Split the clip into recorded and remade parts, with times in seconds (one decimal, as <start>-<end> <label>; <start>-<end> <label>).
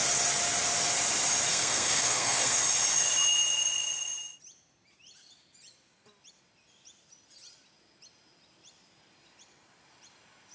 0.0-1.5 recorded; 1.5-2.6 remade; 2.6-10.5 recorded